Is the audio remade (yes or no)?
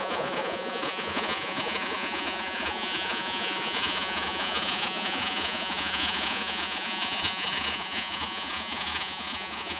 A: yes